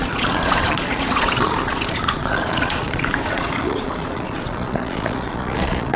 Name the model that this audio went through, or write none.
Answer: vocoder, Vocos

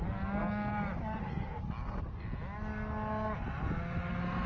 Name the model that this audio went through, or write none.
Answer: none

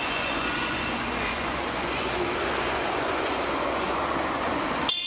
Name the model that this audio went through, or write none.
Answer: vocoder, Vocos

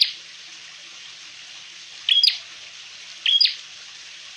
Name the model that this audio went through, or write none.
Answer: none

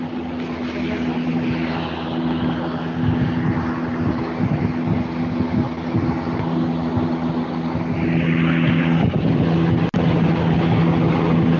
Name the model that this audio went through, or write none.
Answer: none